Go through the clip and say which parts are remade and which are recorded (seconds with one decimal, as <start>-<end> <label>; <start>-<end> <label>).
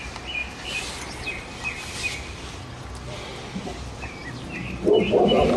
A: 0.0-5.6 recorded